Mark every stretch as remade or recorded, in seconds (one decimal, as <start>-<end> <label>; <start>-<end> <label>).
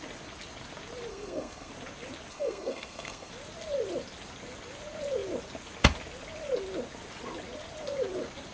0.0-1.1 recorded; 1.1-1.7 remade; 1.7-2.3 recorded; 2.3-3.3 remade; 3.3-8.5 recorded